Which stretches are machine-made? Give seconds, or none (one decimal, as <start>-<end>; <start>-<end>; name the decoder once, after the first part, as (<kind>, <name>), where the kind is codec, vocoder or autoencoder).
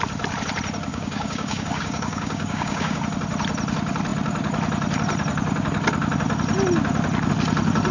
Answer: 0.9-3.0 (codec, DAC)